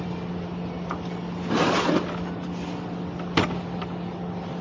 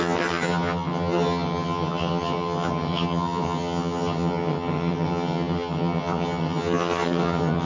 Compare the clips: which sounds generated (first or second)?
second